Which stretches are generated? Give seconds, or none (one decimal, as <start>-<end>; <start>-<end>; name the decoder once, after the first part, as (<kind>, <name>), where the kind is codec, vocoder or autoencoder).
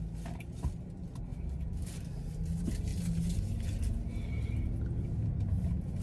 1.3-2.0 (vocoder, BigVGAN v2)